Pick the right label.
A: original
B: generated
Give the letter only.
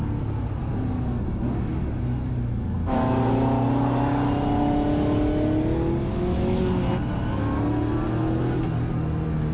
A